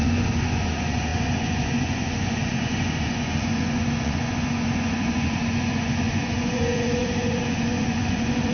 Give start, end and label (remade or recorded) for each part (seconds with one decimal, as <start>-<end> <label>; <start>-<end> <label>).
0.0-8.5 remade